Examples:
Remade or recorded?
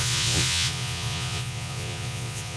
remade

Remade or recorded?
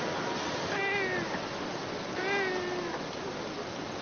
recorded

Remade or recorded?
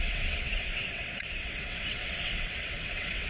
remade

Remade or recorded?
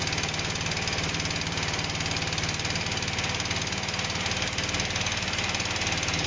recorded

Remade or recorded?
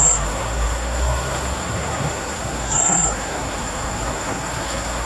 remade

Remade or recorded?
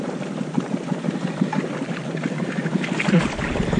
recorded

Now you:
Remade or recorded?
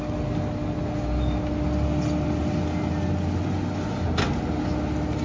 recorded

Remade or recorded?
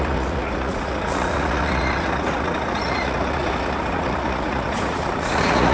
remade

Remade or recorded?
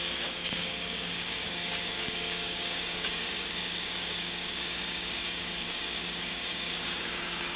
remade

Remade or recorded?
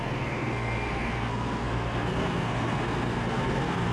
remade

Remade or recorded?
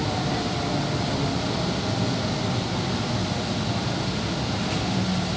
recorded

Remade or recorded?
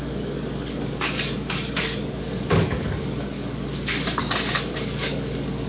remade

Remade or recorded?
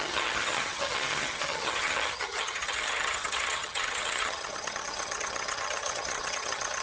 remade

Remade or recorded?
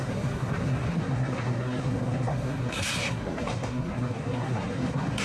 remade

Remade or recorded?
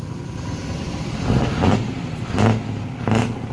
recorded